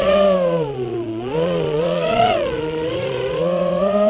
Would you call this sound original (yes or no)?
no